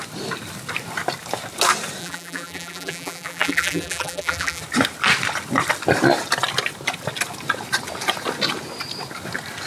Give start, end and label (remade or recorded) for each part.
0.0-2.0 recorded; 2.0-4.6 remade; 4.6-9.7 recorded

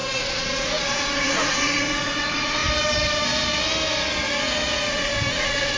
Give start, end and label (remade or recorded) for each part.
0.0-2.6 remade; 2.6-4.9 recorded; 4.9-5.8 remade

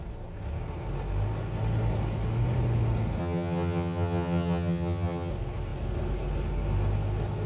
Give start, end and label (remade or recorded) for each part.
0.0-3.2 recorded; 3.2-5.3 remade; 5.3-7.5 recorded

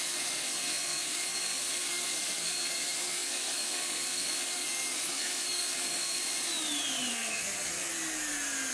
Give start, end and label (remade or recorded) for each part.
0.0-6.2 remade; 6.2-7.1 recorded; 7.1-7.9 remade; 7.9-8.7 recorded

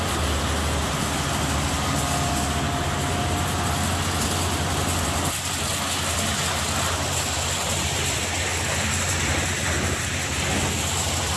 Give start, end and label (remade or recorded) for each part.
0.0-11.4 recorded

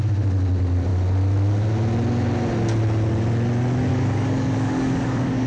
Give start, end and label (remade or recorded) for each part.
0.0-3.9 recorded; 3.9-5.5 remade

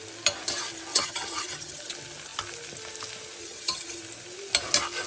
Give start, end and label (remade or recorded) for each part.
0.0-0.9 recorded; 0.9-1.9 remade; 1.9-3.4 recorded; 3.4-4.0 remade; 4.0-5.1 recorded

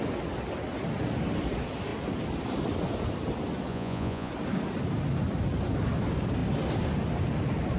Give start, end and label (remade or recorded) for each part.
0.0-3.7 recorded; 3.7-4.3 remade; 4.3-7.8 recorded